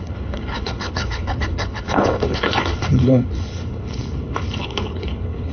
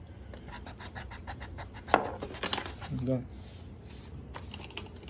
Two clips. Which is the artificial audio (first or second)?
first